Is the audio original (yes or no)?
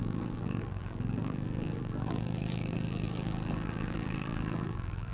no